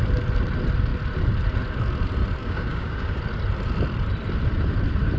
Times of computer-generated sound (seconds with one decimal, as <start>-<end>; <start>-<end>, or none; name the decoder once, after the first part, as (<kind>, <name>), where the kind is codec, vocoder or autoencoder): 2.4-3.2 (codec, DAC)